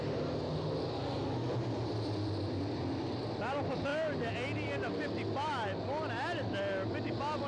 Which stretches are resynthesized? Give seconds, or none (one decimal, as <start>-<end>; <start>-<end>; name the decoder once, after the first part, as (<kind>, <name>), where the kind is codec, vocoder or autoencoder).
none